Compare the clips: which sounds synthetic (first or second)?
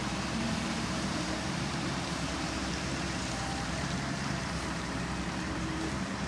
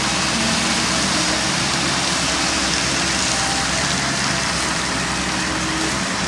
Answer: first